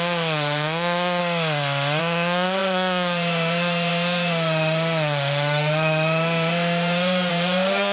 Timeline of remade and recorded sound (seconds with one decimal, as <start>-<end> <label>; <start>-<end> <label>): 0.0-1.2 remade; 1.2-2.0 recorded; 2.0-7.9 remade